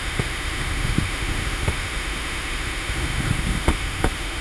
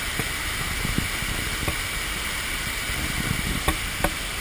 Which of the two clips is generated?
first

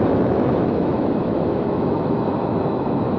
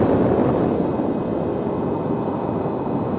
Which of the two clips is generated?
first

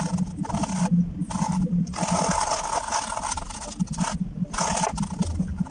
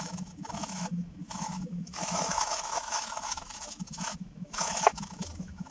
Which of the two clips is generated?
second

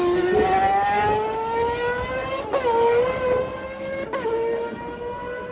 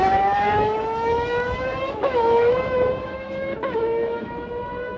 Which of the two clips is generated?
second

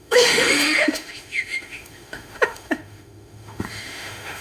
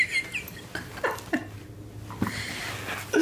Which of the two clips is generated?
first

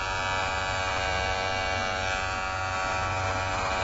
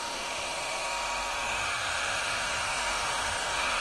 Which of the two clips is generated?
second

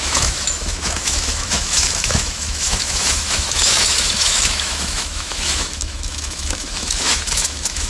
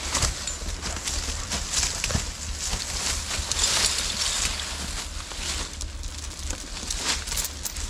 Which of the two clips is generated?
first